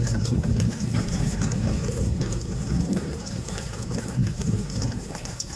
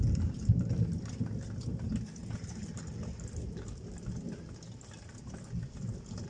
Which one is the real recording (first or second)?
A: second